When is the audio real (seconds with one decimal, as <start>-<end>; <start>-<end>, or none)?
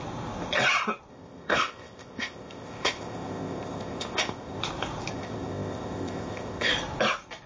0.0-1.1; 4.6-5.1; 6.7-7.5